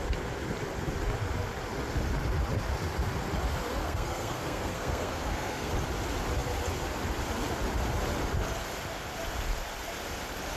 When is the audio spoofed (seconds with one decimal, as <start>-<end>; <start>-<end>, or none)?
3.8-5.7